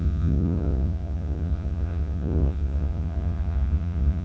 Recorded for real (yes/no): no